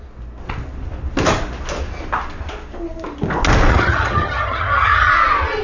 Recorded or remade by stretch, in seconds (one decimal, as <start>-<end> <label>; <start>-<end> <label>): 0.0-3.7 recorded; 3.7-5.1 remade; 5.1-5.6 recorded